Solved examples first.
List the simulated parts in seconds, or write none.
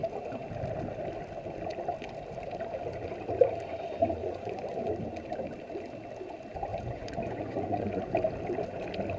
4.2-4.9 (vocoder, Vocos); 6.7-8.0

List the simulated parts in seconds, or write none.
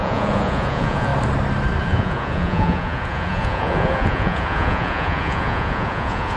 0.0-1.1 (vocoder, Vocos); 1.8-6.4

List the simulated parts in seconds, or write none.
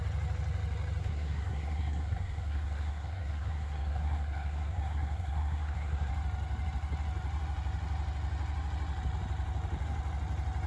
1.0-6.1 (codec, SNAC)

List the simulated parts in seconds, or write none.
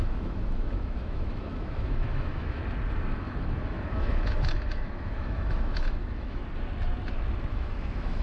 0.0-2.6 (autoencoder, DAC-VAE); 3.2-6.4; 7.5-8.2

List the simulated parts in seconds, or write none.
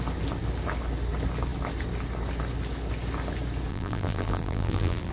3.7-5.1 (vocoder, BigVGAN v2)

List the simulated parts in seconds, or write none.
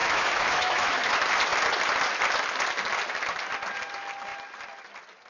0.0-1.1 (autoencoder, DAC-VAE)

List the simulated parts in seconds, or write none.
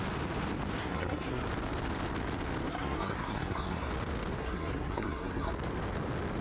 0.8-1.4 (codec, SNAC); 2.7-3.9; 4.4-5.5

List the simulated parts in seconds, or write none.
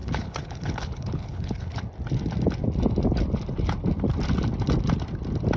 0.0-1.8 (codec, HILCodec)